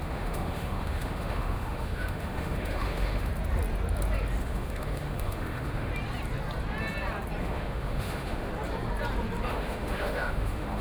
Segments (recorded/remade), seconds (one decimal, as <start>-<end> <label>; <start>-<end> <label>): 0.0-3.3 remade; 3.3-4.4 recorded; 4.4-5.9 remade; 5.9-7.4 recorded; 7.4-8.5 remade; 8.5-9.5 recorded; 9.5-10.8 remade